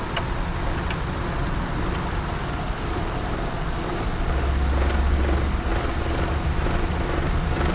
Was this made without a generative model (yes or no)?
yes